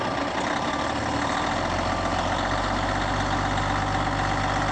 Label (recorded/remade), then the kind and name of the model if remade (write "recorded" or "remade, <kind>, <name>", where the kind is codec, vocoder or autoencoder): recorded